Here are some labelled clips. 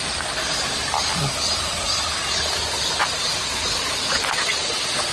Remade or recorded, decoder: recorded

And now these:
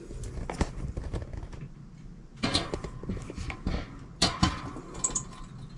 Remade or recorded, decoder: recorded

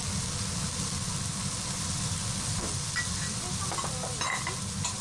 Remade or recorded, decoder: recorded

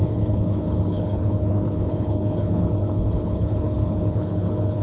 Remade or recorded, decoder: remade, codec, HILCodec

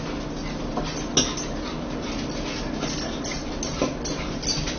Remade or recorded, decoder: recorded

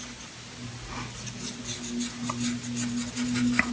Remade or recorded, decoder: recorded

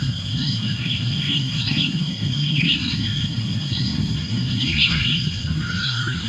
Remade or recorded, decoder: remade, codec, SNAC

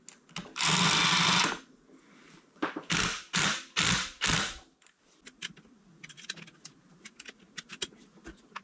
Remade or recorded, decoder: recorded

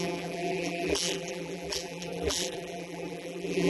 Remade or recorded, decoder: remade, vocoder, BigVGAN v2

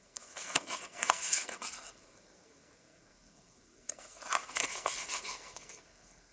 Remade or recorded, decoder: remade, codec, SNAC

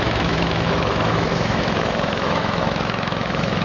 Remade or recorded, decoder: remade, autoencoder, DAC-VAE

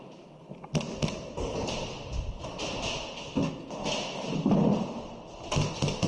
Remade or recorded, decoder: recorded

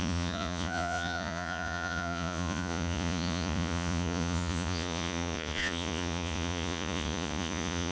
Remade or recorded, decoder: remade, vocoder, Vocos